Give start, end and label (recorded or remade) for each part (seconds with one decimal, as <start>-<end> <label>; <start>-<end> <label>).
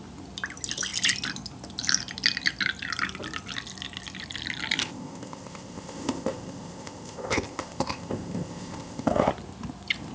0.0-4.8 recorded; 4.8-9.3 remade; 9.3-10.1 recorded